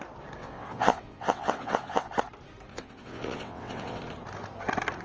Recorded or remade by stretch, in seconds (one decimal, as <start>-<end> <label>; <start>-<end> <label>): 0.0-0.4 recorded; 0.4-2.1 remade; 2.1-2.7 recorded; 2.7-4.0 remade; 4.0-5.0 recorded